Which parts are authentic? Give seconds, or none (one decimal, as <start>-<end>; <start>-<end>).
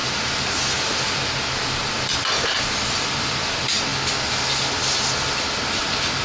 3.9-5.8